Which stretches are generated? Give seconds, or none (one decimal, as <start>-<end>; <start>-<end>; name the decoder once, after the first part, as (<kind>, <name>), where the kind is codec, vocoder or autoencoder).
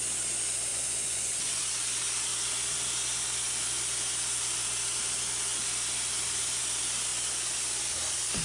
0.7-1.6 (vocoder, Vocos)